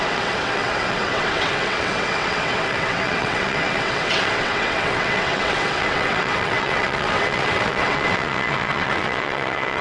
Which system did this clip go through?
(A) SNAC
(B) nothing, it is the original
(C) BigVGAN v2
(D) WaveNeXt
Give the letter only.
D